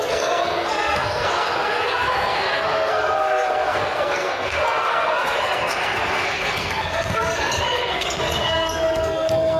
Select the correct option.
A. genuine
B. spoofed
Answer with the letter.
B